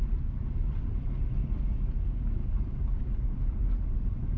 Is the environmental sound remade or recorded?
remade